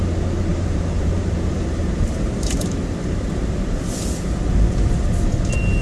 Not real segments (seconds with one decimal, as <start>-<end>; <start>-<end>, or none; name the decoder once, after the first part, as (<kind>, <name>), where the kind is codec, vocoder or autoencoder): 0.5-2.8 (vocoder, BigVGAN v2)